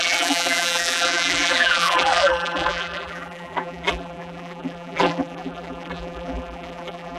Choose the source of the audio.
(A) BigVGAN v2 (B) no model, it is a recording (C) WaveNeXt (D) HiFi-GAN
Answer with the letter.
A